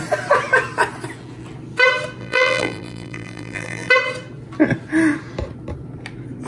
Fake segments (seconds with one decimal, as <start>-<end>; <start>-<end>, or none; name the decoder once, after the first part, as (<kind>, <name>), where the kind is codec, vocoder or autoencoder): 2.2-3.9 (vocoder, BigVGAN v2)

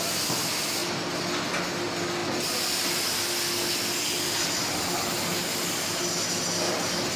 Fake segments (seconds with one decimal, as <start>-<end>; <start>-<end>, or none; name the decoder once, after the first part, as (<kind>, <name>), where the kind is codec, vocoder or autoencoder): none

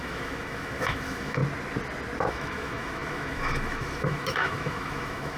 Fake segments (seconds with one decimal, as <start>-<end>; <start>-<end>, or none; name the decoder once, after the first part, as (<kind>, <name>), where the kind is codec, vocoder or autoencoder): 0.0-1.4 (autoencoder, DAC-VAE); 2.3-5.4

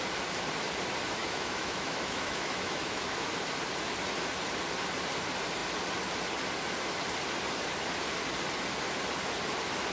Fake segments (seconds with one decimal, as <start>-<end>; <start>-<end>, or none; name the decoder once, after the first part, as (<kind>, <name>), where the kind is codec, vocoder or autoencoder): 1.2-3.3 (autoencoder, DAC-VAE)

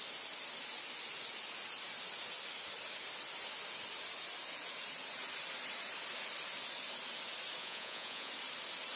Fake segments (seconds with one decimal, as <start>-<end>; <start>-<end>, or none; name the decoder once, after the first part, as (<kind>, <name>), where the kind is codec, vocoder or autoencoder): 7.6-8.3 (vocoder, Vocos)

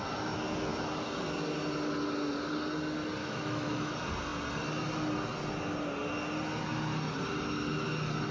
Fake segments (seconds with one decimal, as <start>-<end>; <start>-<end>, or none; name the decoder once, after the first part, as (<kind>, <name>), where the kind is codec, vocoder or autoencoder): 3.2-3.9 (autoencoder, DAC-VAE)